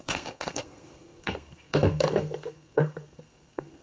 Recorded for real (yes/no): no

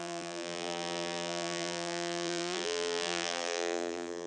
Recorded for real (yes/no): no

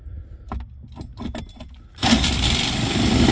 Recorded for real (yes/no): yes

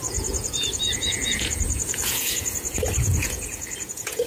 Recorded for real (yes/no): no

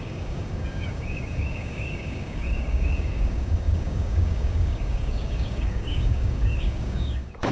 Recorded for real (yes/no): no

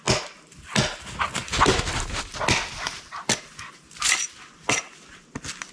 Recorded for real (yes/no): yes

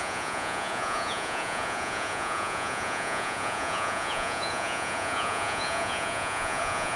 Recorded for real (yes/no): no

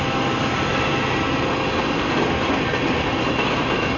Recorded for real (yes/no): yes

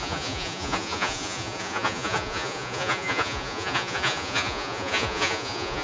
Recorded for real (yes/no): no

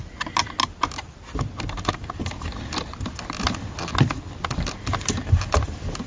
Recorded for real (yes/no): yes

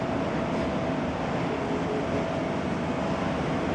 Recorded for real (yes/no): yes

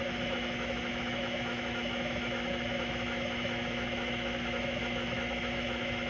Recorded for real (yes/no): no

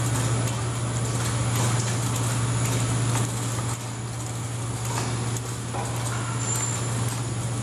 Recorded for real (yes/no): yes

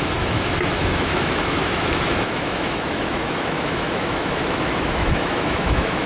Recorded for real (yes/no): no